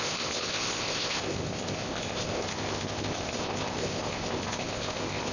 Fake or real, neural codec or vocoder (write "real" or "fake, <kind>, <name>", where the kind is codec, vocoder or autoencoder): fake, codec, ZipCodec